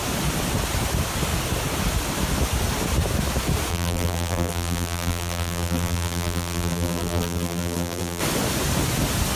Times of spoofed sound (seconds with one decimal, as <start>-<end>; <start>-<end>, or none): 3.7-8.2